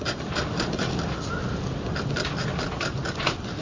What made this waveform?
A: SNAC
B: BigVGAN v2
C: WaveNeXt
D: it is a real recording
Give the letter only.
B